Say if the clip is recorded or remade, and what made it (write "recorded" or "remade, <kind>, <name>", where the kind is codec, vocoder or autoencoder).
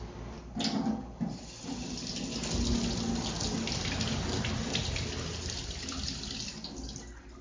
recorded